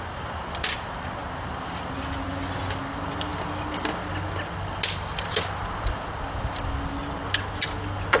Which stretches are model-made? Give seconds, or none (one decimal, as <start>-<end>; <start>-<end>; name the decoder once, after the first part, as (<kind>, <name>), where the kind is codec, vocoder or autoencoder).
none